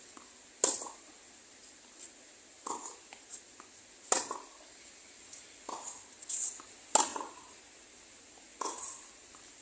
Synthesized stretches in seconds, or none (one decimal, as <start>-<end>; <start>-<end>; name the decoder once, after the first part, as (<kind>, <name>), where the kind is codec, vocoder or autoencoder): 7.1-8.3 (vocoder, BigVGAN v2)